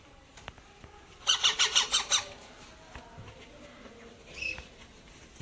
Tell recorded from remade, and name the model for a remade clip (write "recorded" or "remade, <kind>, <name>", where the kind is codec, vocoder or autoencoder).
recorded